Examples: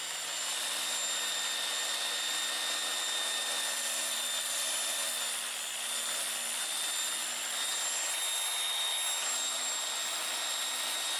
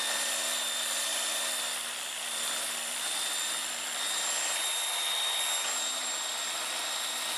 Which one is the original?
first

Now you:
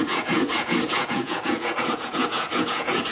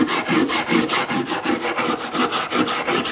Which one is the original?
second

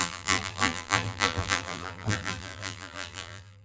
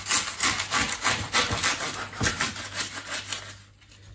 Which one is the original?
second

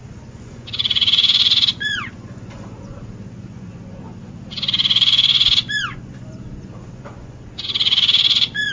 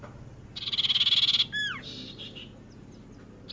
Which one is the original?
second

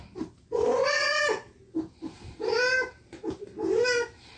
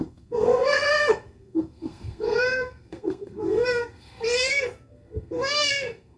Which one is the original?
first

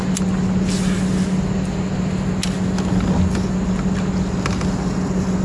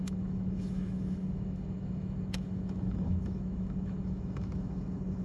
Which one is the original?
first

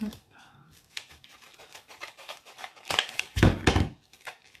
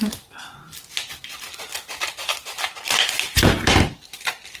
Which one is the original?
second